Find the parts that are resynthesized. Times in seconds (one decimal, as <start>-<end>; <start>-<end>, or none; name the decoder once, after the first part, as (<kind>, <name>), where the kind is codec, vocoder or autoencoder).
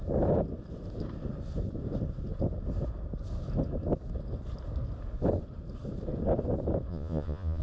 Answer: 6.9-7.6 (vocoder, Vocos)